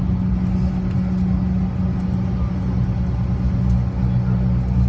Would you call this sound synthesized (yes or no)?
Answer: no